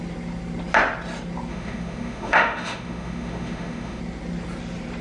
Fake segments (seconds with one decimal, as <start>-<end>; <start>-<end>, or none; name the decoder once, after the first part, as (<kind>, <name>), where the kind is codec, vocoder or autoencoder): 1.5-4.0 (autoencoder, DAC-VAE)